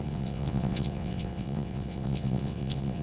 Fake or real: fake